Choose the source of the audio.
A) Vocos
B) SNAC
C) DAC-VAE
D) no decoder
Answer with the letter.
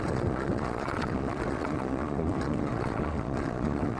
A